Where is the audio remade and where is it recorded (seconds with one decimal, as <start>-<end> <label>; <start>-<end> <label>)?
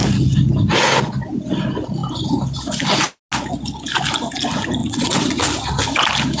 0.0-4.8 recorded; 4.8-5.4 remade; 5.4-6.4 recorded